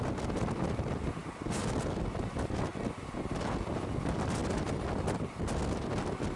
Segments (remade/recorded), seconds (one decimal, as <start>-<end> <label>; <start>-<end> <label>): 0.0-6.4 recorded